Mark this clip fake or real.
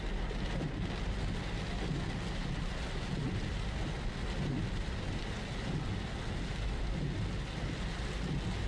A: real